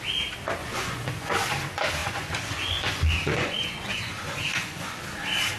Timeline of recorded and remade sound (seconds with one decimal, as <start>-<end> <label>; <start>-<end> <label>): 0.0-0.6 recorded; 0.6-1.3 remade; 1.3-2.0 recorded; 2.0-5.0 remade; 5.0-5.6 recorded